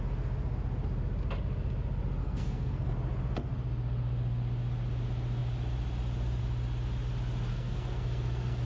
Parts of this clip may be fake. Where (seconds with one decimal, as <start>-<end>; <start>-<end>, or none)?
2.2-2.9; 7.5-8.6